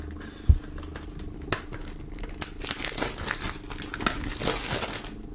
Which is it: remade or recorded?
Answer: recorded